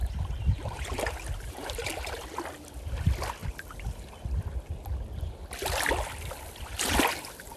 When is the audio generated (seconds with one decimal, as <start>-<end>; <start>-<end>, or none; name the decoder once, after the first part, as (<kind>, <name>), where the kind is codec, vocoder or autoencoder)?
0.0-1.7 (vocoder, BigVGAN v2)

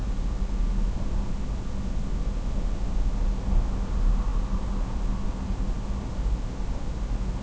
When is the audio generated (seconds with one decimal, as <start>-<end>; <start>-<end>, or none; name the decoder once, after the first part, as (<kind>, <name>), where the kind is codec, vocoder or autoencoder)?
none

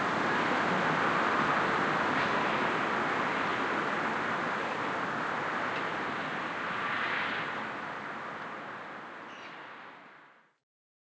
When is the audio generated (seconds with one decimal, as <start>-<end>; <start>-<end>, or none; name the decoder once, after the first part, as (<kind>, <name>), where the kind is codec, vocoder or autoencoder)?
none

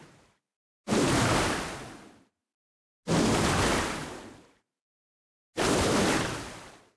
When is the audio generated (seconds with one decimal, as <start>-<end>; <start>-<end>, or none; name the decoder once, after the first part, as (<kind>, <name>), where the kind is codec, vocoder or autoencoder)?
none

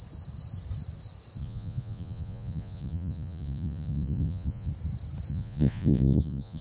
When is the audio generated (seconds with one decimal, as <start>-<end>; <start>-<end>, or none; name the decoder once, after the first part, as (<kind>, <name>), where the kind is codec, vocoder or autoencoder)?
1.4-4.7 (vocoder, Vocos); 5.3-6.6

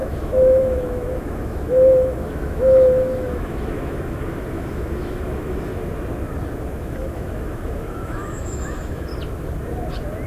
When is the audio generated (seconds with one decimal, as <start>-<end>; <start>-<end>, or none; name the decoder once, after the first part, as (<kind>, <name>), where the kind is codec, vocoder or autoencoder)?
0.0-5.7 (autoencoder, DAC-VAE); 6.8-9.1

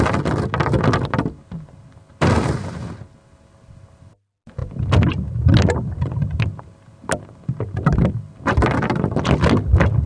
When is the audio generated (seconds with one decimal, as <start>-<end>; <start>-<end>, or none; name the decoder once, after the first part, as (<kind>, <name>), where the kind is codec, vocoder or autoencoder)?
none